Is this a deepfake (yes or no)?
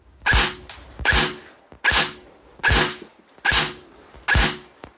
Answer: no